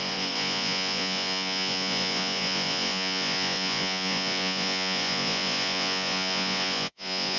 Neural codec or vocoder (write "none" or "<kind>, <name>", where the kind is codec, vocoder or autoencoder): vocoder, Vocos